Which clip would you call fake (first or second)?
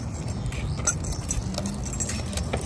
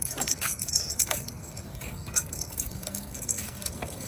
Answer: second